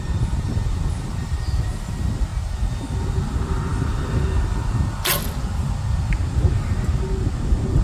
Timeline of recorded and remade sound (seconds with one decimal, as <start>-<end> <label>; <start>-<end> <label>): 0.0-7.8 recorded